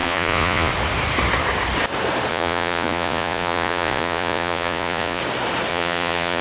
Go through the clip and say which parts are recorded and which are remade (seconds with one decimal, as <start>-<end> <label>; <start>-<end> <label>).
0.0-0.7 remade; 0.7-2.3 recorded; 2.3-5.2 remade; 5.2-5.7 recorded; 5.7-6.4 remade